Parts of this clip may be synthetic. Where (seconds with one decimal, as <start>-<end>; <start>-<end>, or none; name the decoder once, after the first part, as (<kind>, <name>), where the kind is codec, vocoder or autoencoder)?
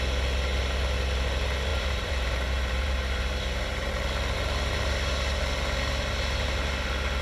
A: 1.7-3.9 (vocoder, BigVGAN v2)